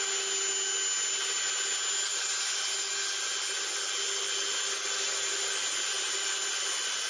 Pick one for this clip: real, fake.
real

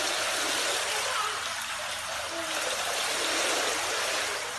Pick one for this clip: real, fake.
real